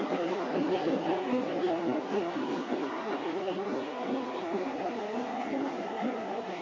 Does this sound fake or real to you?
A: fake